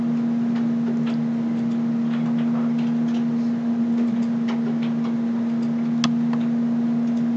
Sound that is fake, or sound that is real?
real